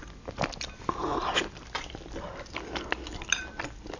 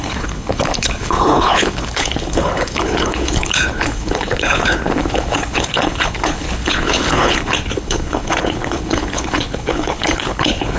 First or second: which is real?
first